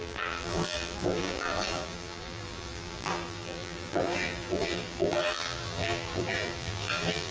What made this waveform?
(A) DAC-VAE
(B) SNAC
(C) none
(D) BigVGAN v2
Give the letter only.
D